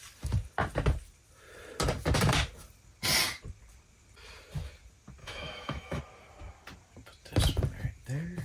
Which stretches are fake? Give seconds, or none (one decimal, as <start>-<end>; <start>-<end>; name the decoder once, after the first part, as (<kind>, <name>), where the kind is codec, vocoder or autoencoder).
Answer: 5.2-6.0 (autoencoder, DAC-VAE)